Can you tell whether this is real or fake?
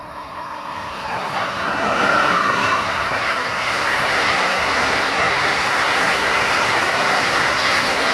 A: fake